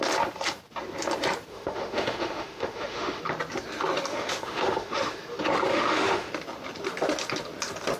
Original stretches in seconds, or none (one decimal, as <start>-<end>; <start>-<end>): 0.0-1.5; 3.2-4.1; 5.2-5.7; 6.3-8.0